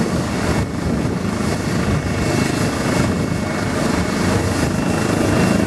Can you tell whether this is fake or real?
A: real